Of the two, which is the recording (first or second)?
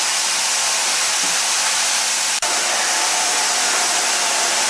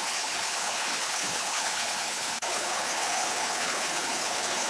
first